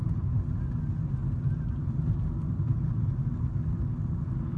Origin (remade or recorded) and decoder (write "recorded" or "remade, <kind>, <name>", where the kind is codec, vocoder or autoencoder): recorded